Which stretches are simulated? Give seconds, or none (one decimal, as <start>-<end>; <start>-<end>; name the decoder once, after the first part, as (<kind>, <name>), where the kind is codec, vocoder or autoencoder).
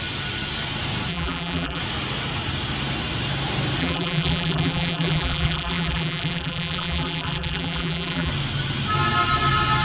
1.1-1.8 (vocoder, BigVGAN v2); 3.8-8.3